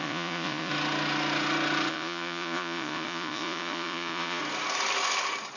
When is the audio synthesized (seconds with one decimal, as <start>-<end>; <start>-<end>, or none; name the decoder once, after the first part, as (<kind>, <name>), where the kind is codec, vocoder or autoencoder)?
0.0-0.7 (vocoder, Vocos); 1.9-4.4